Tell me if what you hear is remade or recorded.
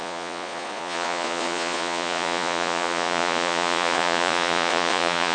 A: remade